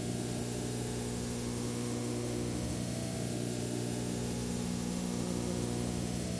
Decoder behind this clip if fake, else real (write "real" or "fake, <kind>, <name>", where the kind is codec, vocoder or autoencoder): fake, autoencoder, DAC-VAE